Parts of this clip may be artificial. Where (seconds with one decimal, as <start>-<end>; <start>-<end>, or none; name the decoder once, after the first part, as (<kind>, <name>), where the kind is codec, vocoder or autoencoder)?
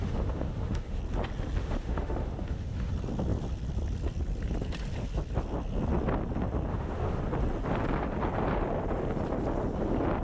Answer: 0.0-1.0 (autoencoder, DAC-VAE); 1.6-2.9; 6.7-7.2